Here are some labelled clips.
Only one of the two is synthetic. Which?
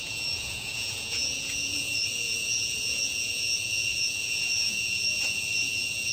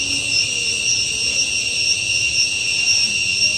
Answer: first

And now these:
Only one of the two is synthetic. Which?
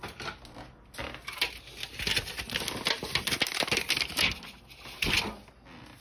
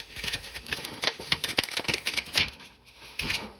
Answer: second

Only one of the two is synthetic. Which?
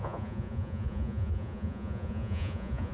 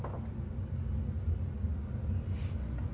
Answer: first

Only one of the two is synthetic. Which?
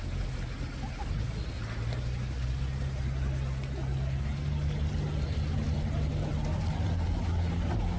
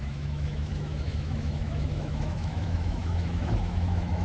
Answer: second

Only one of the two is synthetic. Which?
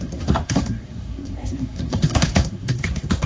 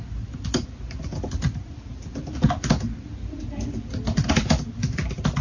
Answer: first